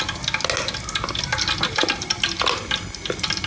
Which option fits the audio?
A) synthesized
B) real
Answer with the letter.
B